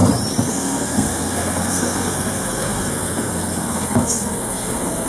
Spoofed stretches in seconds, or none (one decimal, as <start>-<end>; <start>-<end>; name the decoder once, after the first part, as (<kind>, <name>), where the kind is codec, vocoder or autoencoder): 0.5-5.1 (codec, SNAC)